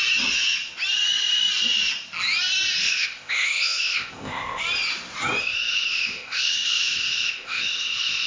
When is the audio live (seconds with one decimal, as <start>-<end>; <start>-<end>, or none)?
0.0-2.8; 4.6-5.4

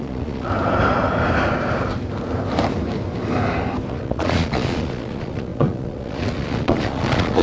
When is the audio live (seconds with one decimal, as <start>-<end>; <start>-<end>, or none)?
0.5-3.9

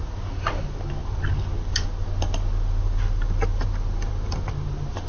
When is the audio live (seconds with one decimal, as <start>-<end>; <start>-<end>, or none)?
0.0-5.1

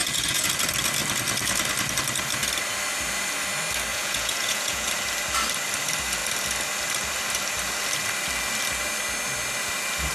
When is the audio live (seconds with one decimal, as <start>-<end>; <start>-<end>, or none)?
0.5-3.9; 4.9-10.1

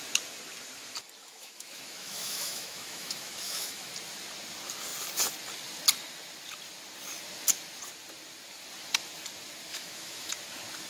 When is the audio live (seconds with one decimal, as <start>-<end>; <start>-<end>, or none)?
0.0-1.2; 3.9-9.7; 10.3-10.9

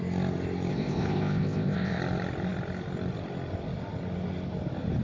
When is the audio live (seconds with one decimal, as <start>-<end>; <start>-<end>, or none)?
0.0-0.7; 2.0-5.0

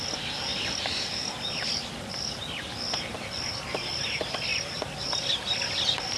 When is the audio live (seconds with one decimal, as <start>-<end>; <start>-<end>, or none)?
0.0-6.2